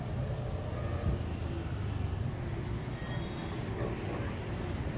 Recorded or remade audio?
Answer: recorded